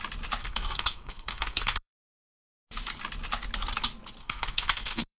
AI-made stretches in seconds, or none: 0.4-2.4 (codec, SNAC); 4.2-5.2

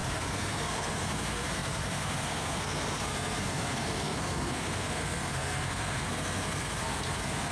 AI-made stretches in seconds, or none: 0.0-7.5 (codec, SNAC)

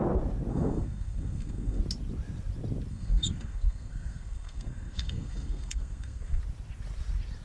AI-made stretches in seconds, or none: 0.5-1.8 (codec, SNAC); 2.9-6.4

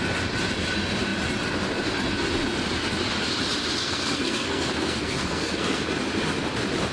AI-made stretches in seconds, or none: 3.8-5.9 (codec, SNAC)

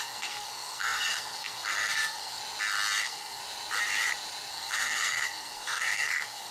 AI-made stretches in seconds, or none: 0.0-2.4 (codec, SNAC); 3.0-3.4; 4.5-6.5

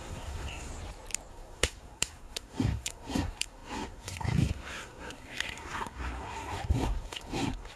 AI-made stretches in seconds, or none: 0.0-0.7 (codec, SNAC); 1.3-7.8